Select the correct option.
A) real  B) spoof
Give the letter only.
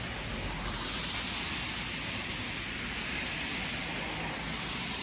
A